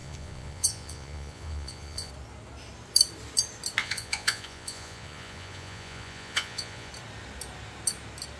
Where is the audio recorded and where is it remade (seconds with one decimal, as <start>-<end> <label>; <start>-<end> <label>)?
0.0-2.1 remade; 2.1-3.8 recorded; 3.8-6.9 remade; 6.9-8.4 recorded